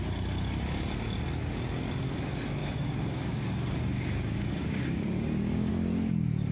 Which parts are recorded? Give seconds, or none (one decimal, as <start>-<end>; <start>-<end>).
0.0-2.6; 5.7-6.5